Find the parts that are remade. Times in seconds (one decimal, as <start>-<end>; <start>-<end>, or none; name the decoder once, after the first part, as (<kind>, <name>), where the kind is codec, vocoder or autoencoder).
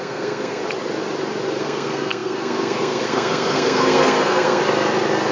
0.0-0.6 (codec, SNAC); 1.6-4.6